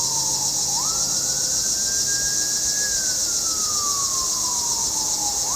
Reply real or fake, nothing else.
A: real